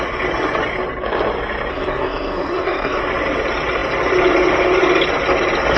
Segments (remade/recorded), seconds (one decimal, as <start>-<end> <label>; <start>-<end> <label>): 0.0-1.7 recorded; 1.7-3.0 remade; 3.0-5.8 recorded